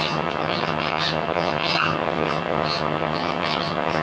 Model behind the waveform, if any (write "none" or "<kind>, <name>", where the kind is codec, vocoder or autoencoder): vocoder, HiFi-GAN